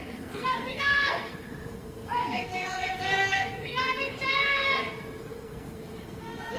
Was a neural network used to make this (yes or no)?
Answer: yes